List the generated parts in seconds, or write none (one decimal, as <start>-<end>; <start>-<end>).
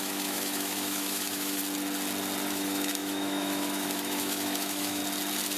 0.0-1.6; 2.5-5.0